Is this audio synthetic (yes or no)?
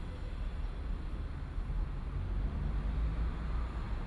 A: no